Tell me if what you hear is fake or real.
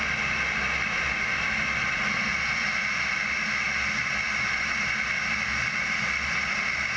real